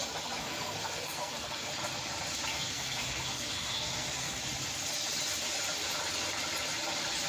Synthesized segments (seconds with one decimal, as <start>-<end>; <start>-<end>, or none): 0.4-1.7; 2.5-4.4